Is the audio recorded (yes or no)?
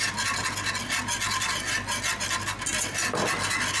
yes